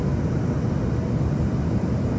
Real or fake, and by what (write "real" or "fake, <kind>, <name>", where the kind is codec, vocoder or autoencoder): real